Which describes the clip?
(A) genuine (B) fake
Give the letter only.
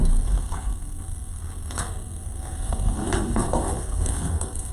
B